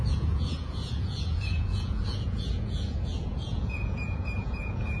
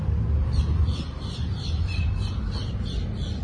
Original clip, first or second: second